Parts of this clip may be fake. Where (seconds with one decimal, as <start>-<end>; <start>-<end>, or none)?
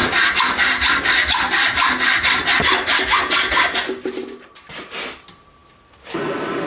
none